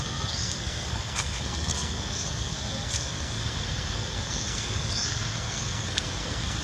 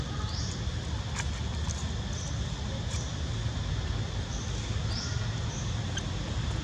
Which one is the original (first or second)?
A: second